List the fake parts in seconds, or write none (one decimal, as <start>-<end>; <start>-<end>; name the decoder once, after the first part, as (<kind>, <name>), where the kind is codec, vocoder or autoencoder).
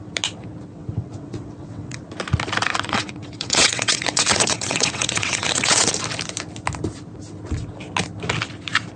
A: 0.7-2.0 (vocoder, WaveNeXt); 2.7-5.9